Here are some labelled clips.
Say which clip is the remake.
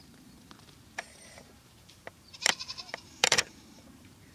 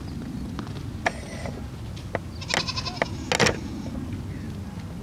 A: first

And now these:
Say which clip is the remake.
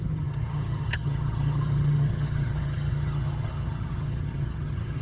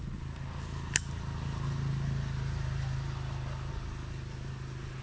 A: first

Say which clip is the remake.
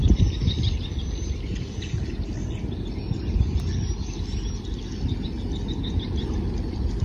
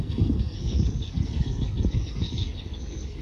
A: second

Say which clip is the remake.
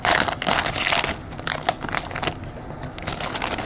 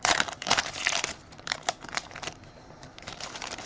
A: second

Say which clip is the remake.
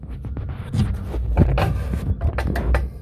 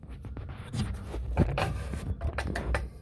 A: second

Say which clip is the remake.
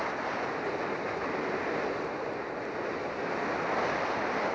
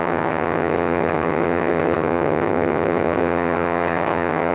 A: second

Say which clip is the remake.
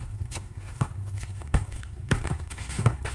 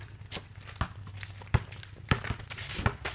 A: first